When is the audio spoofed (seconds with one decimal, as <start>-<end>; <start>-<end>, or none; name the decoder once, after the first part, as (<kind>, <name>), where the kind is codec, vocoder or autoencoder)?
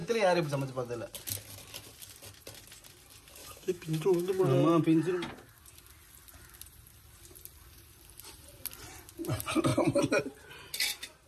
0.0-0.5 (autoencoder, DAC-VAE); 3.4-4.4